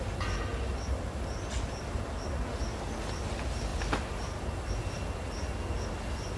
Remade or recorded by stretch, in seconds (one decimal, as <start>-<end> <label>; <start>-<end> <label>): 0.0-6.4 recorded